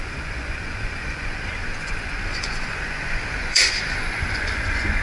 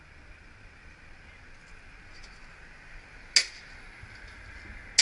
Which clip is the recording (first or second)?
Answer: second